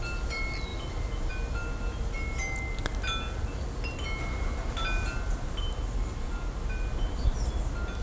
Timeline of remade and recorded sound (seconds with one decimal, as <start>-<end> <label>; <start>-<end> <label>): 0.0-8.0 recorded